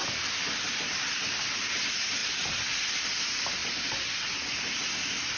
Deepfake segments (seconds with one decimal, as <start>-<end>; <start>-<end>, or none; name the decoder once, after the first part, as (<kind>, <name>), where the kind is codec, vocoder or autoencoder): 0.0-1.1 (vocoder, BigVGAN v2)